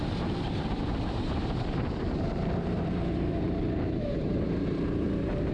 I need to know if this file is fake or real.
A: fake